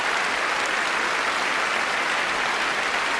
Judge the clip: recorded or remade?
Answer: recorded